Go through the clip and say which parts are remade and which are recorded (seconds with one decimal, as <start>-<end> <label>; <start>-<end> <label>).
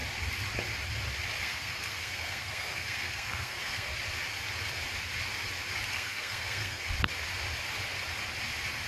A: 0.0-1.4 recorded; 1.4-3.9 remade; 3.9-5.9 recorded; 5.9-6.8 remade; 6.8-8.9 recorded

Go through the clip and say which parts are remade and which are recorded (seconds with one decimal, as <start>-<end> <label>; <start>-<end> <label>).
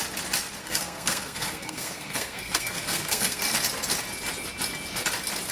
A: 0.0-0.6 recorded; 0.6-3.4 remade; 3.4-5.5 recorded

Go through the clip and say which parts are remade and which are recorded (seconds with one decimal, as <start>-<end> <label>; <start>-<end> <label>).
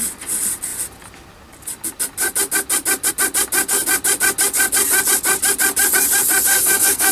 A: 0.0-6.5 recorded; 6.5-7.1 remade